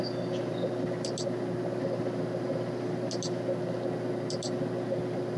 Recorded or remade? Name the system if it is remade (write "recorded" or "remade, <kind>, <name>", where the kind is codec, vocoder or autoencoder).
recorded